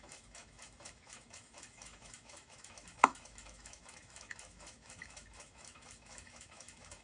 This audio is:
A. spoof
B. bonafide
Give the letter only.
A